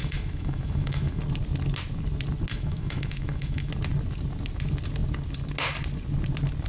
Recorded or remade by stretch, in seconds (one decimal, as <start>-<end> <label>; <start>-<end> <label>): 0.0-1.2 remade; 1.2-2.5 recorded; 2.5-3.7 remade; 3.7-6.7 recorded